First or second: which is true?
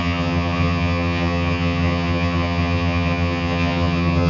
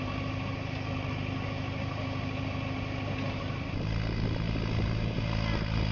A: second